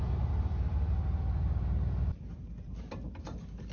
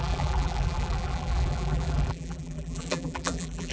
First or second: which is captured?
first